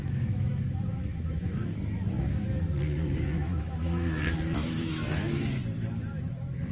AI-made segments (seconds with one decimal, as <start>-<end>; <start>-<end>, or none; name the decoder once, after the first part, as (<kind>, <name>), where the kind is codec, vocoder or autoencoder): 0.0-5.6 (autoencoder, DAC-VAE); 6.3-6.7

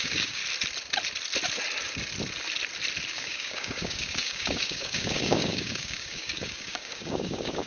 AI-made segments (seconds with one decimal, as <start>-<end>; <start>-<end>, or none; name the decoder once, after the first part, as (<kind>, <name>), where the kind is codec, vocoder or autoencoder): 0.0-0.4 (codec, DAC); 3.1-7.7

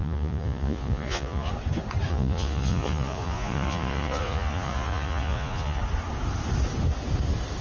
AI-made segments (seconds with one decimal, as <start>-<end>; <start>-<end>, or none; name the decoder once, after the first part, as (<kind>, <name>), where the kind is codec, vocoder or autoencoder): 0.0-1.5 (vocoder, Vocos); 2.1-5.8

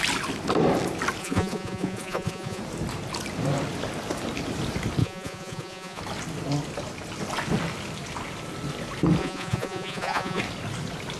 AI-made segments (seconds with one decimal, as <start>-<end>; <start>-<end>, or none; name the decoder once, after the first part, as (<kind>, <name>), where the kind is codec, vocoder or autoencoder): 1.2-2.6 (vocoder, Vocos); 5.0-6.0; 9.2-10.4